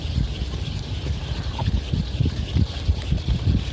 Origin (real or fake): real